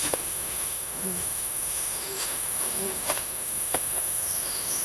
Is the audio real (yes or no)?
no